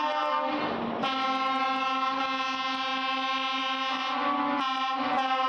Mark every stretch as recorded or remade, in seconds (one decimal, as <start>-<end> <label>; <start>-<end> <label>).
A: 0.0-5.5 recorded

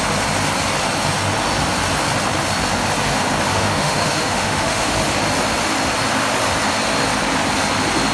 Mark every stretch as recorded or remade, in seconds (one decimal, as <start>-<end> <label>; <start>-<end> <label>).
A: 0.0-3.5 recorded; 3.5-4.9 remade; 4.9-8.1 recorded